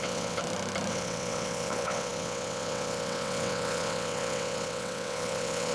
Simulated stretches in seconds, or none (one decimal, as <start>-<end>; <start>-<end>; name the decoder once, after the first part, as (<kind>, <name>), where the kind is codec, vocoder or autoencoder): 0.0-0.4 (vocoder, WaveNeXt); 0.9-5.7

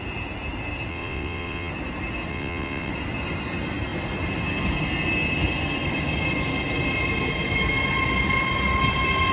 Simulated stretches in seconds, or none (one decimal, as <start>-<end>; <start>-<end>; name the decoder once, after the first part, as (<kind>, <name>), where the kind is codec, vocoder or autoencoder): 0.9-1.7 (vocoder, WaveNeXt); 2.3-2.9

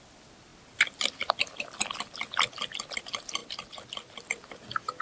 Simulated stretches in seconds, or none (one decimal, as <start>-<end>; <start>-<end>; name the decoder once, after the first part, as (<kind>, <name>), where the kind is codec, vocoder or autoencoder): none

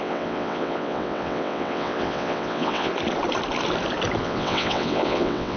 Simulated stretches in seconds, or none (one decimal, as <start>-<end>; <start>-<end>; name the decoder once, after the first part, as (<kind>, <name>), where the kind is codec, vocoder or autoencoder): 0.0-2.9 (vocoder, WaveNeXt); 4.2-5.6

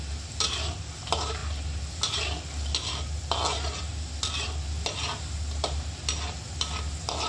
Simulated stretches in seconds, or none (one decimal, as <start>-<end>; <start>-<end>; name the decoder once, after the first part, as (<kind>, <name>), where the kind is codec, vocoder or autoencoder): none

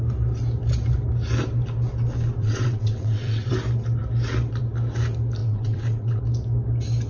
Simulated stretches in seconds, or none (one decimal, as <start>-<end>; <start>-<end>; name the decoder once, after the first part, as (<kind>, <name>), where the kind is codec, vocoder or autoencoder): 2.4-3.5 (vocoder, WaveNeXt); 5.4-6.2

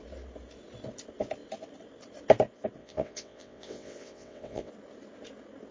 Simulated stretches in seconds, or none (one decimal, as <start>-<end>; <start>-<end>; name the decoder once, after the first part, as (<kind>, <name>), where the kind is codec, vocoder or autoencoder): 2.8-4.7 (vocoder, WaveNeXt)

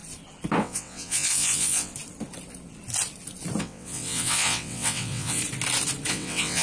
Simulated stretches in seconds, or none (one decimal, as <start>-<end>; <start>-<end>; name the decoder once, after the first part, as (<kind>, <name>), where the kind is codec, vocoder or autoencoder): 0.6-1.9 (vocoder, WaveNeXt); 3.6-5.4; 6.1-6.6